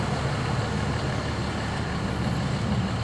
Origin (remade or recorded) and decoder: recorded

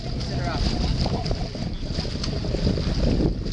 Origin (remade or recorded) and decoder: recorded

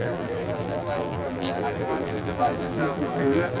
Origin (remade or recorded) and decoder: remade, vocoder, BigVGAN v2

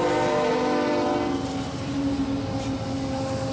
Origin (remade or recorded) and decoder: recorded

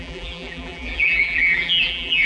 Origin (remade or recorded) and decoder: remade, vocoder, BigVGAN v2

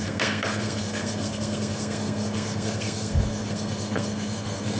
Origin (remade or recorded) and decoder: remade, codec, SNAC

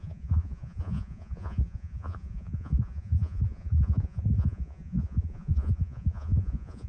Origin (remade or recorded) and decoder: remade, vocoder, Vocos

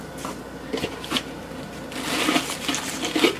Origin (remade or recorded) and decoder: recorded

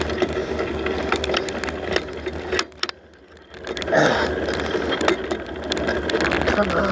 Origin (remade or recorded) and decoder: recorded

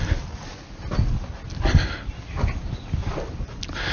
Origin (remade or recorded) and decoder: recorded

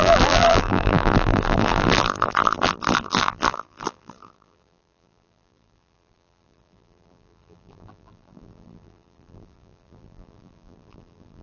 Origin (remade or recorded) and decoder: remade, vocoder, BigVGAN v2